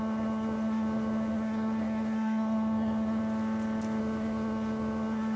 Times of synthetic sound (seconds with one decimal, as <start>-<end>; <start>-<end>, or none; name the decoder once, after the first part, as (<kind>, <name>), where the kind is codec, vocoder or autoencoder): 0.0-3.2 (codec, SNAC); 4.0-5.4